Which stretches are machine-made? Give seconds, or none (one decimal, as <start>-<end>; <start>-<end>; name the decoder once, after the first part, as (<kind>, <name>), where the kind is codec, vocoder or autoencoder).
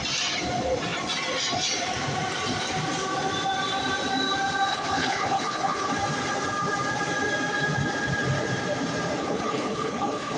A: 4.7-5.9 (codec, HILCodec); 9.2-10.4